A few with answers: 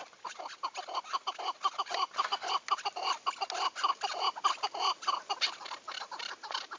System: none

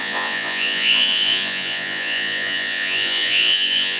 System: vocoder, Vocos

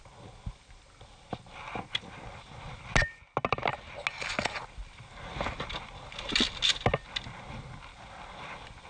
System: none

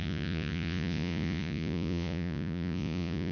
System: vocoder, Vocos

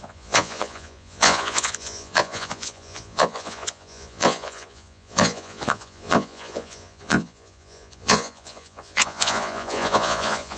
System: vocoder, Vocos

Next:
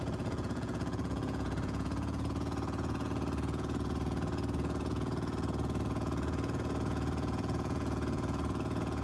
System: vocoder, Vocos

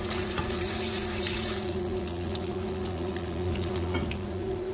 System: vocoder, Vocos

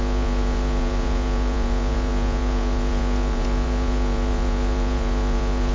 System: vocoder, Vocos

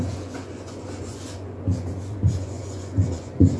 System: vocoder, Vocos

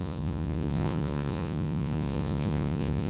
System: vocoder, Vocos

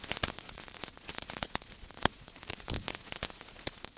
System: vocoder, Vocos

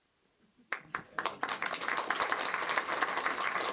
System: none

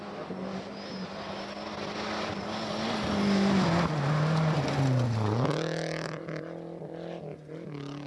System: none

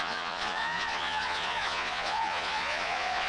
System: vocoder, Vocos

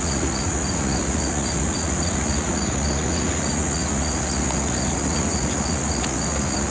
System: vocoder, Vocos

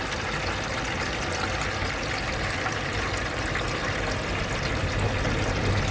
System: none